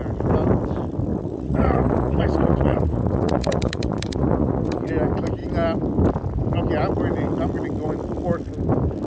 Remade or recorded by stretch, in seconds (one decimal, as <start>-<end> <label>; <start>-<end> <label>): 0.0-1.1 recorded; 1.1-4.9 remade; 4.9-9.1 recorded